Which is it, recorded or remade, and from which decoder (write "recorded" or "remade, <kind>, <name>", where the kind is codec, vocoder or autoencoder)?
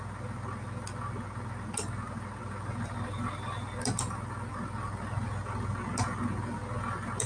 recorded